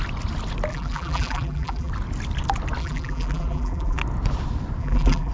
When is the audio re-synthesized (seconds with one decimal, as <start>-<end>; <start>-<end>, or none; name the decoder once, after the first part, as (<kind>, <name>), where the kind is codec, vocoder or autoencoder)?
0.7-1.9 (vocoder, BigVGAN v2); 2.8-4.0; 4.8-5.3